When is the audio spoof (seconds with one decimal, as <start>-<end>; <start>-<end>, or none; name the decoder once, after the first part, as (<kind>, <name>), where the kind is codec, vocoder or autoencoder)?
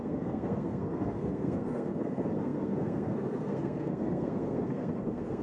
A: 0.0-5.4 (codec, SNAC)